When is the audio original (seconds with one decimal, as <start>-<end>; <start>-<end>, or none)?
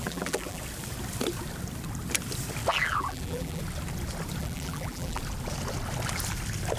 0.6-2.7; 3.6-4.4; 5.2-6.8